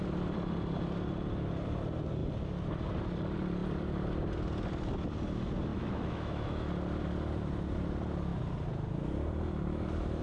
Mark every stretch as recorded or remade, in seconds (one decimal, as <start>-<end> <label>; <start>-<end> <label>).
0.0-5.7 recorded; 5.7-6.7 remade; 6.7-10.2 recorded